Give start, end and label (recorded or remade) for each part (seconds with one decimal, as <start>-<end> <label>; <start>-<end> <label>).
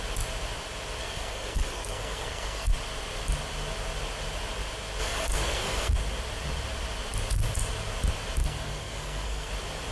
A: 0.0-1.0 recorded; 1.0-2.7 remade; 2.7-5.0 recorded; 5.0-5.9 remade; 5.9-8.4 recorded; 8.4-9.5 remade; 9.5-9.9 recorded